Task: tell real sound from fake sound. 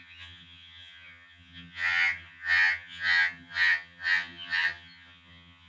fake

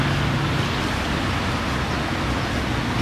real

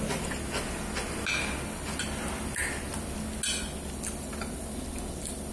real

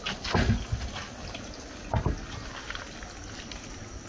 real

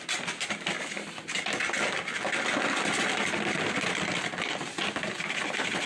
real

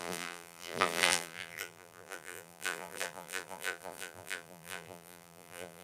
fake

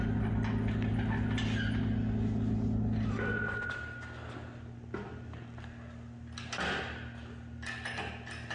real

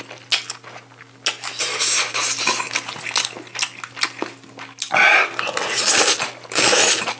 real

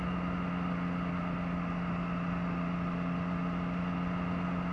real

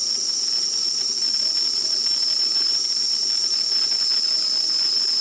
real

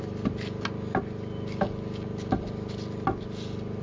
real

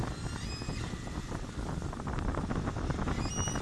real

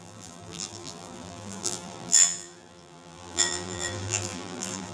fake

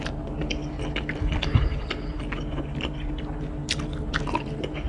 real